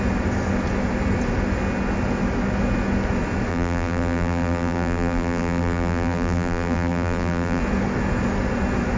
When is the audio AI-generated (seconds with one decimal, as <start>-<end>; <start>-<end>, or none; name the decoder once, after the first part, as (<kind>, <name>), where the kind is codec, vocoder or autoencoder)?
3.5-7.6 (vocoder, BigVGAN v2)